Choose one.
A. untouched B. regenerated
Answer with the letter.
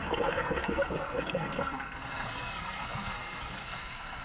B